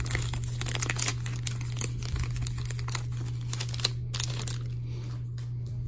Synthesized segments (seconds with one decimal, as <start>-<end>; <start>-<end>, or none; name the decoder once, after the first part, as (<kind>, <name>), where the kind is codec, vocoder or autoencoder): none